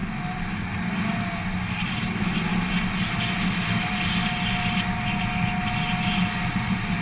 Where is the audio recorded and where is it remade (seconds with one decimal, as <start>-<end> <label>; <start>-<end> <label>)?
0.0-7.0 recorded